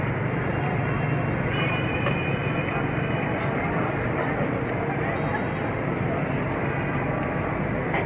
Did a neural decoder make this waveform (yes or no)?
no